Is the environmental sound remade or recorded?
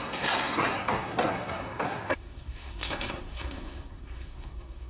remade